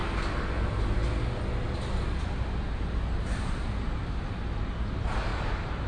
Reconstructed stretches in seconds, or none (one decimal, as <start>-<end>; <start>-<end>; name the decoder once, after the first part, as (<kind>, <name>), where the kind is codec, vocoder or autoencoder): none